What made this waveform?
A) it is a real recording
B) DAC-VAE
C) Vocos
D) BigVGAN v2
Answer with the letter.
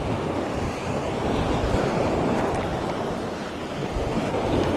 A